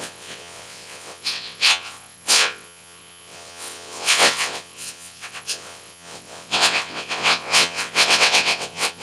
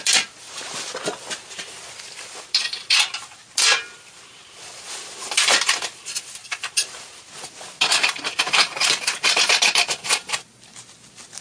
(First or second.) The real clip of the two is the second